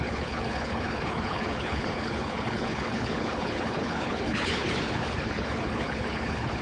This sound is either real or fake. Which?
fake